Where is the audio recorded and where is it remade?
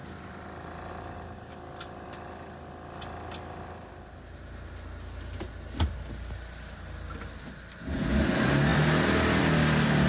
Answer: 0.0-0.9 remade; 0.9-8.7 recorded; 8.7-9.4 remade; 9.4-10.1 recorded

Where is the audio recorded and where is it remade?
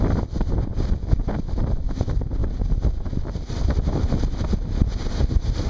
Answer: 0.0-5.7 recorded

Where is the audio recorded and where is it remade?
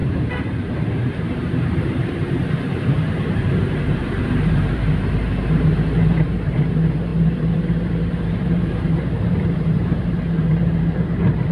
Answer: 0.0-0.7 recorded; 0.7-11.5 remade